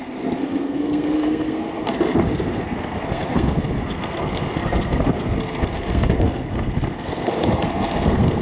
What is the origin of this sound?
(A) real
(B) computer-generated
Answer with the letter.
B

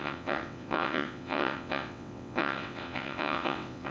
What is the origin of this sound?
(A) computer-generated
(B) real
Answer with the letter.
A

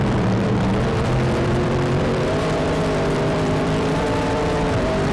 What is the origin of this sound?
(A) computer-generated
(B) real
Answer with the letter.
A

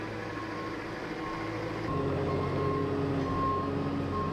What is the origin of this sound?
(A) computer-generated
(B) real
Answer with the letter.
B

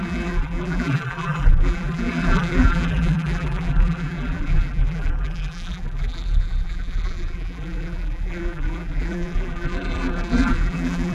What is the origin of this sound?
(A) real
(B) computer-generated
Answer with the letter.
B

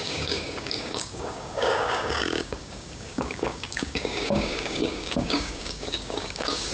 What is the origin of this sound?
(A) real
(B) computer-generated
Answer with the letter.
B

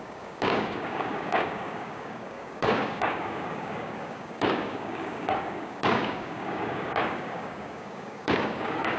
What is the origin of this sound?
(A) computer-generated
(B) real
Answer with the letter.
A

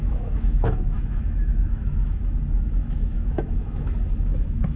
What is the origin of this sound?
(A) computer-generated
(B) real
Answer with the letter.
A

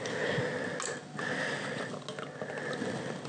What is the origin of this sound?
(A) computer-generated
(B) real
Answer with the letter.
B